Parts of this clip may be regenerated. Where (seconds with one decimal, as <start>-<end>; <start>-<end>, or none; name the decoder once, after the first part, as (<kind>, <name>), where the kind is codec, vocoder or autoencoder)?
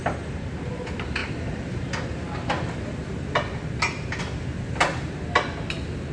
none